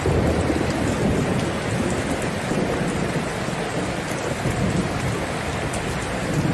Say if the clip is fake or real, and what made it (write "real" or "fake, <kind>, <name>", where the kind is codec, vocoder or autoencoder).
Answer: real